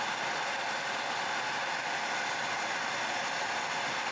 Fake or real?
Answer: real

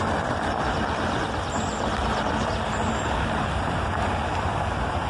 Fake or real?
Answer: real